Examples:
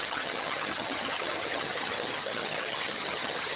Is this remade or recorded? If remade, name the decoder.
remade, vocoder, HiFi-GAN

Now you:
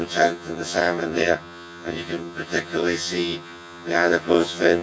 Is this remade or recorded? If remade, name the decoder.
remade, vocoder, HiFi-GAN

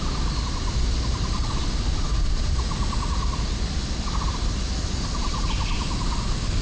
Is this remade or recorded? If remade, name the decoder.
recorded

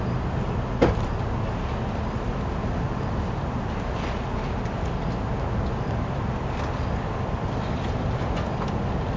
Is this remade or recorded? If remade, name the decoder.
recorded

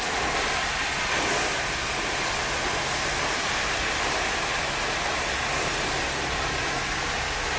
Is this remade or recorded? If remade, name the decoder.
recorded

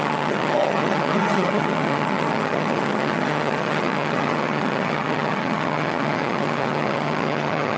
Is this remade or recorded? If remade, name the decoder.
remade, vocoder, HiFi-GAN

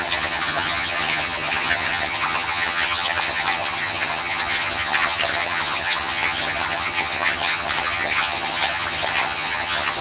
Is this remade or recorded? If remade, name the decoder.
remade, vocoder, HiFi-GAN